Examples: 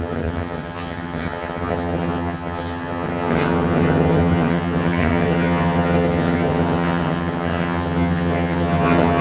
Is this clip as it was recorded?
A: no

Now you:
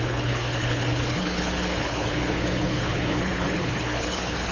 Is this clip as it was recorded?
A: no